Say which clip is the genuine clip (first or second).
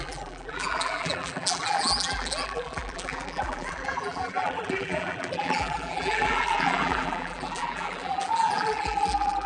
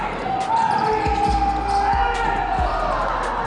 second